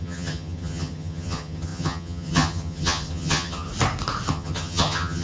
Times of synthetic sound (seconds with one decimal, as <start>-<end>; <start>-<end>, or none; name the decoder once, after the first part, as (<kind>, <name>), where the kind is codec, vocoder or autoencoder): 0.0-3.7 (vocoder, HiFi-GAN); 4.3-5.2